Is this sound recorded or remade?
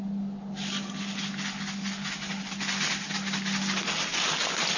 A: recorded